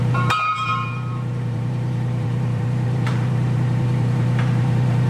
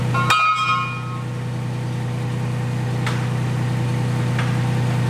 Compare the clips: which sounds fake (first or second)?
first